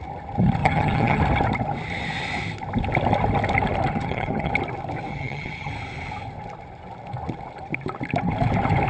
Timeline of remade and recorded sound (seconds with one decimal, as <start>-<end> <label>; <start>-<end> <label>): 0.0-0.6 recorded; 0.6-1.2 remade; 1.2-3.9 recorded; 3.9-4.5 remade; 4.5-5.1 recorded; 5.1-5.7 remade; 5.7-8.9 recorded